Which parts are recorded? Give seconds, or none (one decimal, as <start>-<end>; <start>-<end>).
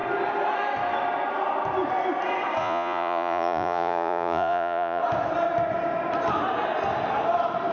0.0-2.6; 5.0-7.7